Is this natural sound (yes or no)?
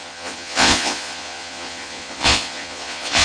no